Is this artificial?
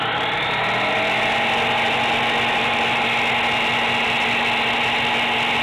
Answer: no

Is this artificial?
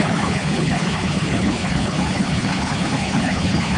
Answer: yes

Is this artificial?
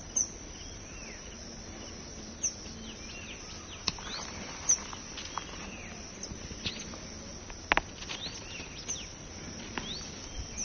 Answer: no